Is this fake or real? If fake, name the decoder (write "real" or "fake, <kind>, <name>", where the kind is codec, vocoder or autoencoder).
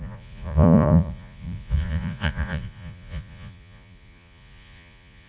fake, vocoder, Vocos